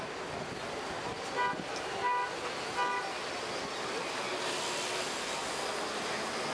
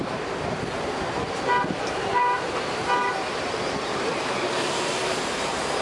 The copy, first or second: second